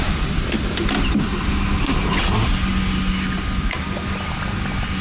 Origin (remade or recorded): recorded